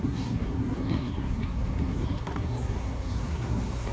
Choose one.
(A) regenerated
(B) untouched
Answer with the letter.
A